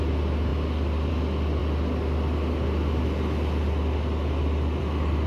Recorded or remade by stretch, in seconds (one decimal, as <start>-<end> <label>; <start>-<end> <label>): 0.0-5.3 recorded